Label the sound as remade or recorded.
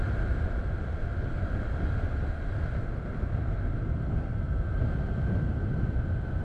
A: recorded